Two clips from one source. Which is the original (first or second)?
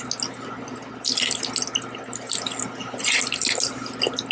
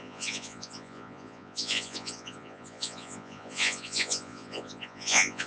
first